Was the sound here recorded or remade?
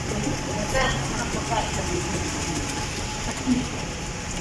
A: recorded